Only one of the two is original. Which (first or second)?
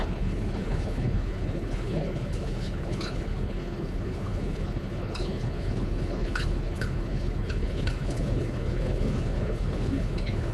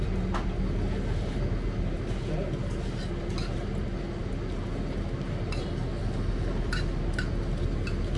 second